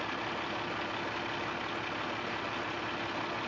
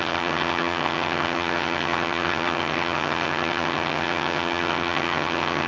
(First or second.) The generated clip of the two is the second